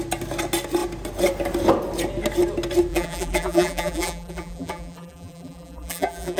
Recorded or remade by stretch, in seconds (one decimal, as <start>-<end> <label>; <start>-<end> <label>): 0.0-2.9 recorded; 2.9-6.4 remade